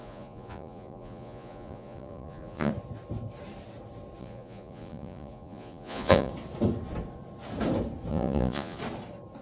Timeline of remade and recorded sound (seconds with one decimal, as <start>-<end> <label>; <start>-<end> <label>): 0.0-2.7 remade; 2.7-4.2 recorded; 4.2-6.3 remade; 6.3-8.1 recorded; 8.1-8.8 remade; 8.8-9.4 recorded